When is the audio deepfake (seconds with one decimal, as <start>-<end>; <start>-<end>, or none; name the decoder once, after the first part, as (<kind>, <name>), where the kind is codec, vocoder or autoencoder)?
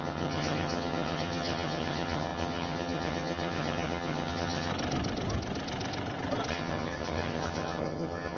0.0-4.7 (vocoder, HiFi-GAN); 6.5-8.4